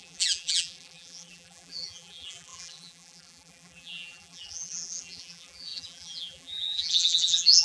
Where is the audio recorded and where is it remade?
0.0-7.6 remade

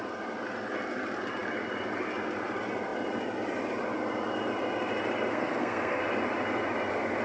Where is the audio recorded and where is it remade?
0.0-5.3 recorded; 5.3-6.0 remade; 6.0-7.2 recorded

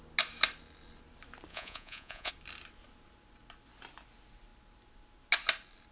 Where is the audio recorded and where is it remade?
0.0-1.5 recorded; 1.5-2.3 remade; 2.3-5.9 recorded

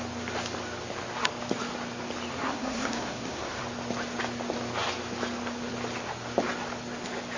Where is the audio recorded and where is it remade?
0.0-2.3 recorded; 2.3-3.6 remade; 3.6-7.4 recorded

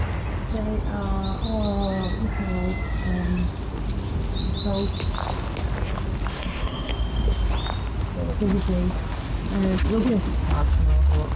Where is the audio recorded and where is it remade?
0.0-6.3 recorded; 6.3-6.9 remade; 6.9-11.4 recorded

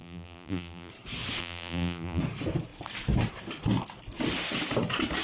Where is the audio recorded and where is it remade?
0.0-0.9 remade; 0.9-1.4 recorded; 1.4-2.2 remade; 2.2-5.2 recorded